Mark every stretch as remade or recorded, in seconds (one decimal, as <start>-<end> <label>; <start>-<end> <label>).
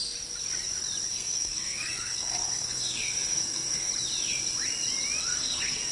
0.0-1.1 recorded; 1.1-3.9 remade; 3.9-5.2 recorded; 5.2-5.9 remade